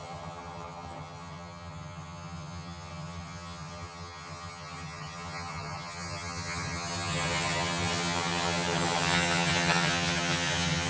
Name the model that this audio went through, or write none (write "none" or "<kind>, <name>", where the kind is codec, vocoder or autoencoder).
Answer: vocoder, HiFi-GAN